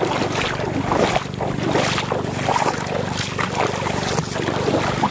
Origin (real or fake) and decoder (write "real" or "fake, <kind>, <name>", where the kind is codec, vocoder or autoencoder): real